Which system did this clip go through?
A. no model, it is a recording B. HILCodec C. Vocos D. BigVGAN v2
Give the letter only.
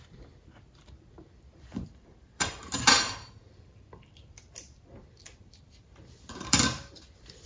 D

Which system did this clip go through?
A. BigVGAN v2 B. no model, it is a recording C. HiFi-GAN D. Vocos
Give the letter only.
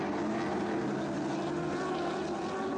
B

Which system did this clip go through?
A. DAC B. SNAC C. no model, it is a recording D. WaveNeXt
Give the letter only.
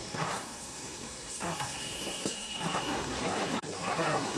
B